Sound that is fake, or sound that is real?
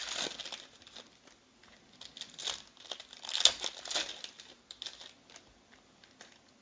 real